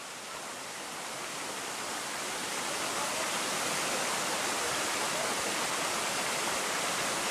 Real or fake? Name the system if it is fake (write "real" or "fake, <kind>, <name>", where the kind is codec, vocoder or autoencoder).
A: real